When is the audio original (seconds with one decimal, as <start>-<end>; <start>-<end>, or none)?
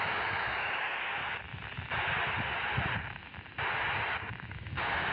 1.2-4.3